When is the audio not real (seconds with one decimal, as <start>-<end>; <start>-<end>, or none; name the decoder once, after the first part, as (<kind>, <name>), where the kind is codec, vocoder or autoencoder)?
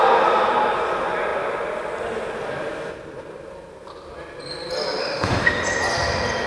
5.0-5.6 (autoencoder, DAC-VAE)